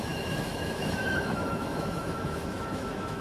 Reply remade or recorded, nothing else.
remade